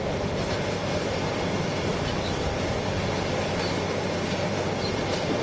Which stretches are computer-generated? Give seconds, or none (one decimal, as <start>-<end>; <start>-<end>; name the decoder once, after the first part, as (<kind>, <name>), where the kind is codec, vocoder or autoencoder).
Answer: 0.0-1.9 (vocoder, BigVGAN v2); 4.3-5.4